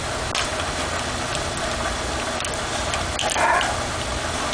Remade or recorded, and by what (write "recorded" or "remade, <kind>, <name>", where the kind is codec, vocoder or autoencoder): recorded